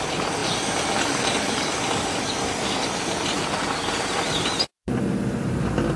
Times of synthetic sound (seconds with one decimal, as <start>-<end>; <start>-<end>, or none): none